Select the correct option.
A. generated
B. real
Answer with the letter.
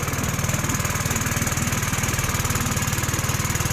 B